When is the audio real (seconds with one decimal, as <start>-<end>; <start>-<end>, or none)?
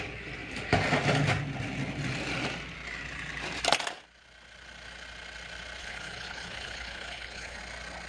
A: 0.0-5.8; 7.6-8.1